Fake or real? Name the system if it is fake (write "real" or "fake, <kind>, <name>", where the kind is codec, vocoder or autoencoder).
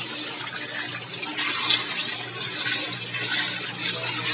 real